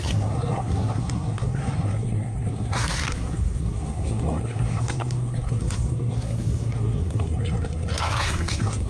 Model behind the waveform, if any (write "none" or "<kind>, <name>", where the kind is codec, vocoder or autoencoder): codec, SNAC